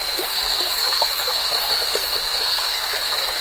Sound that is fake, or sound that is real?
fake